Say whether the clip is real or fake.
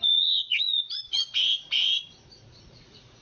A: fake